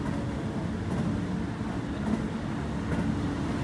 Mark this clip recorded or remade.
recorded